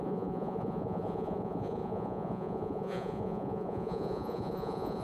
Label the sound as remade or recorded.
remade